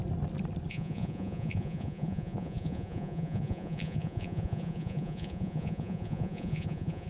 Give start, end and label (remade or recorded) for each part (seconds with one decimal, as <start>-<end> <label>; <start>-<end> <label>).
0.0-0.7 recorded; 0.7-7.1 remade